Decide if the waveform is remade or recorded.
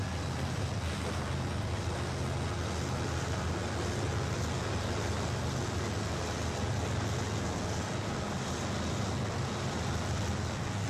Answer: recorded